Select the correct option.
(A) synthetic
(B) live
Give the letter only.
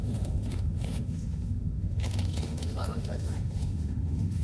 A